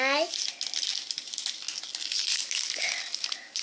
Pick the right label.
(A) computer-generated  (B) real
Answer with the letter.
B